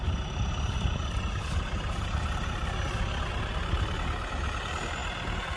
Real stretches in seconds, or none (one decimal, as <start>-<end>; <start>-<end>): 0.0-5.6